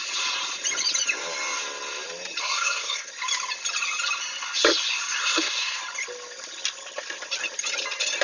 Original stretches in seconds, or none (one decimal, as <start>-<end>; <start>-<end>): 0.0-2.4; 3.1-5.2; 5.8-8.2